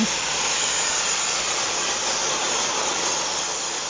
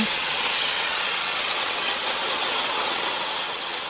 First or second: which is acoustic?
first